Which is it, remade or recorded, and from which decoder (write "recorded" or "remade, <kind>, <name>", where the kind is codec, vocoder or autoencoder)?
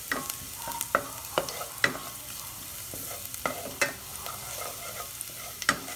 recorded